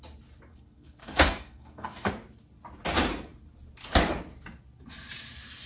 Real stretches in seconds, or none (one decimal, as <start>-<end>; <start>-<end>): 0.0-0.5; 2.1-5.7